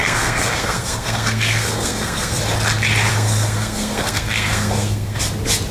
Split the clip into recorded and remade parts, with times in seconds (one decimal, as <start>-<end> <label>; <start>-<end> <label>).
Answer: 0.0-2.4 remade; 2.4-3.1 recorded; 3.1-5.2 remade; 5.2-5.7 recorded